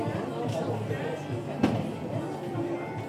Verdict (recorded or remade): recorded